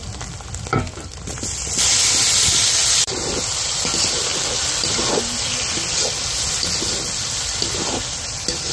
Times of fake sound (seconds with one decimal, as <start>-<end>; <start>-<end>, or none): none